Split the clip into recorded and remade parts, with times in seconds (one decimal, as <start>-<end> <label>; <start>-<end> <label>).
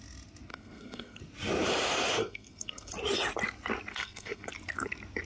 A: 0.0-0.5 recorded; 0.5-1.2 remade; 1.2-2.2 recorded; 2.2-2.9 remade; 2.9-3.9 recorded; 3.9-4.5 remade; 4.5-5.2 recorded